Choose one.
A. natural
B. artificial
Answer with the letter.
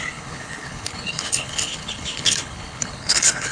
B